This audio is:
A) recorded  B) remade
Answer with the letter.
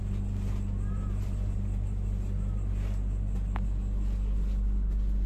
A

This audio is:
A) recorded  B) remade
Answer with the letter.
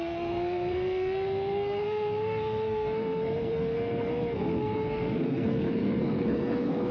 B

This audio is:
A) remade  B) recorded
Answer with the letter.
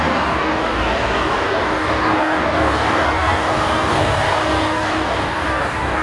A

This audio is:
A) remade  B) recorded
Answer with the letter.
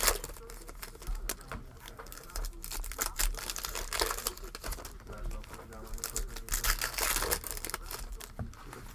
B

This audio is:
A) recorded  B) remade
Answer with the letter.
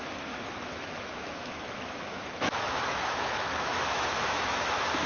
B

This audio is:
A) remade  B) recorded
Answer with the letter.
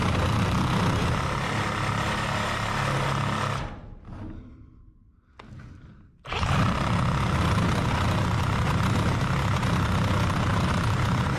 B